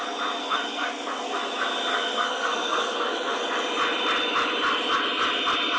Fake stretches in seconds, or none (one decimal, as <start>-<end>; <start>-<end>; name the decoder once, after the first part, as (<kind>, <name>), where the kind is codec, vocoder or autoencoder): 0.4-1.4 (codec, SNAC); 1.9-3.4